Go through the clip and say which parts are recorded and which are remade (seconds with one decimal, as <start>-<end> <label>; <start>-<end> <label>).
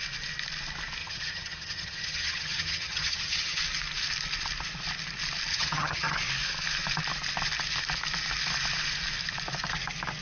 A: 0.0-1.0 recorded; 1.0-3.6 remade; 3.6-5.5 recorded; 5.5-6.2 remade; 6.2-10.2 recorded